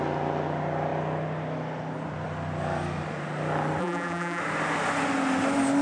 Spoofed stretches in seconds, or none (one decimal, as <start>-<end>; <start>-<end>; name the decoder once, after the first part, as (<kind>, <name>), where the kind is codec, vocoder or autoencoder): 3.8-4.4 (vocoder, BigVGAN v2)